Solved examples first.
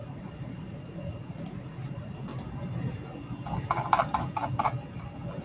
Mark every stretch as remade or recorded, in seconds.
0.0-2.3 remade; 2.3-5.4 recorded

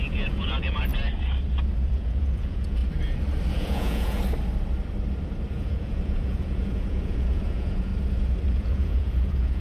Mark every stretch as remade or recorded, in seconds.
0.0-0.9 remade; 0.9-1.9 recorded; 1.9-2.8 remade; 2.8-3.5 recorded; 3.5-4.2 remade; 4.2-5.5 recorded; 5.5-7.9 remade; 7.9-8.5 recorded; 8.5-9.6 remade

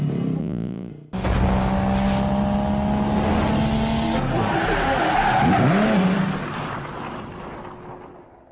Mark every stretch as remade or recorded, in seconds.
0.0-0.4 recorded; 0.4-0.9 remade; 0.9-8.5 recorded

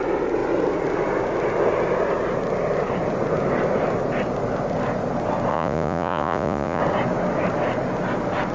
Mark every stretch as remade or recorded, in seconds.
0.0-5.5 recorded; 5.5-6.8 remade; 6.8-8.5 recorded

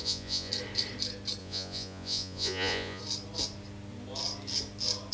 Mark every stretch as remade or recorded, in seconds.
0.0-0.5 remade; 0.5-1.4 recorded; 1.4-3.0 remade; 3.0-5.1 recorded

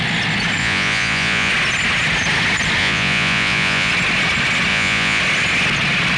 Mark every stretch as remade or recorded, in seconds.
0.0-0.6 recorded; 0.6-1.5 remade; 1.5-2.8 recorded; 2.8-3.9 remade; 3.9-4.7 recorded; 4.7-5.2 remade; 5.2-6.2 recorded